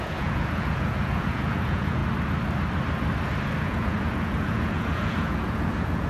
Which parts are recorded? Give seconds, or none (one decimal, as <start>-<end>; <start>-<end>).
2.0-3.6